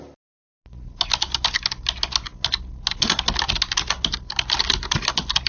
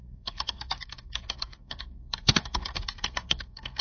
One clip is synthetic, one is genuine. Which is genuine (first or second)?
first